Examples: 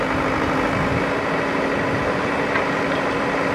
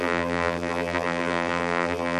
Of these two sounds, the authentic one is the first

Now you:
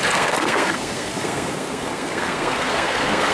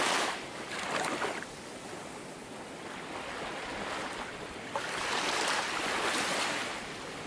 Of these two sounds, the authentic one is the second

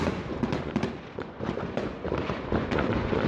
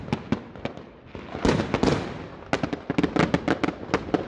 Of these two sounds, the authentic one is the second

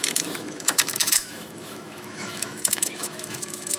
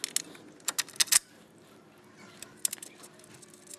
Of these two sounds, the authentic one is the second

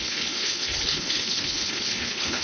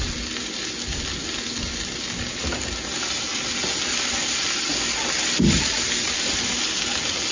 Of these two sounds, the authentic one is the second